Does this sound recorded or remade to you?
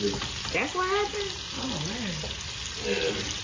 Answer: recorded